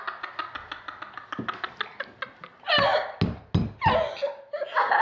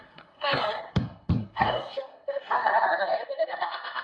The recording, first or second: first